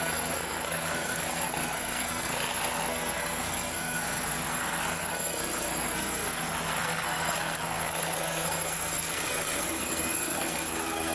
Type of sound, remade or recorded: remade